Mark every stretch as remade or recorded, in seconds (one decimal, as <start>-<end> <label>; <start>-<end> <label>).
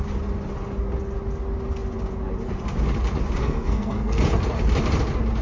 0.0-3.4 recorded; 3.4-4.2 remade; 4.2-5.4 recorded